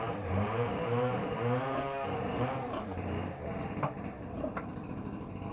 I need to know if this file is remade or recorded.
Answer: remade